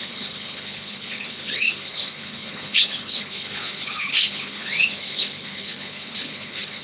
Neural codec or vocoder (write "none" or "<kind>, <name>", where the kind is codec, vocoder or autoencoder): codec, HILCodec